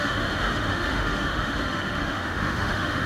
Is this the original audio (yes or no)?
no